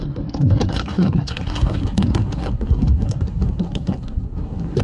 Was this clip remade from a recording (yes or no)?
yes